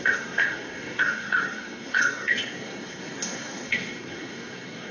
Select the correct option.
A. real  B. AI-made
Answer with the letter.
B